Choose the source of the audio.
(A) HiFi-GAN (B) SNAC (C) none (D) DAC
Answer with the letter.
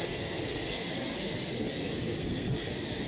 B